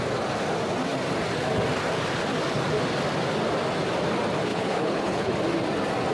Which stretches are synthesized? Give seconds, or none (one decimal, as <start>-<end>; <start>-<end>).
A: 4.5-5.3